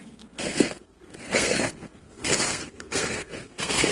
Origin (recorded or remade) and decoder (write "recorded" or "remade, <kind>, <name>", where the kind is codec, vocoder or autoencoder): remade, codec, SNAC